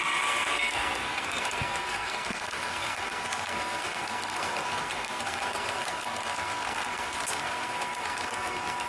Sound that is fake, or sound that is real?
fake